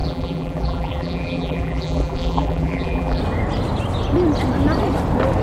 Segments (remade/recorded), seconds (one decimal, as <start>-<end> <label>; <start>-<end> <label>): 0.0-3.2 remade; 3.2-5.4 recorded